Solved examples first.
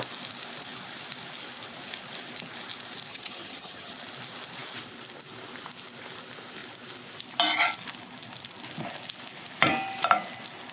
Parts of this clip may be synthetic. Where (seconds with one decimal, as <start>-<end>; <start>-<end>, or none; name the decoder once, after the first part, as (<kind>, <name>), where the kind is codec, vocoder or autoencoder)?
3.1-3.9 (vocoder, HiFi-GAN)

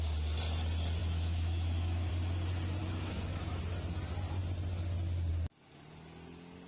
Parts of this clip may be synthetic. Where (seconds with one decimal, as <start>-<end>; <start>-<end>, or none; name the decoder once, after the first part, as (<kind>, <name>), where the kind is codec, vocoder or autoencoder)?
1.0-2.1 (autoencoder, DAC-VAE); 2.8-3.6

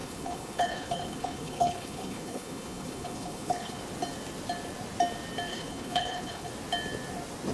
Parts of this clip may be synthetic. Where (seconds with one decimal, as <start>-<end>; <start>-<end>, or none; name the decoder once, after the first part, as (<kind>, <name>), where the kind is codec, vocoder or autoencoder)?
0.0-3.8 (codec, HILCodec); 5.5-6.5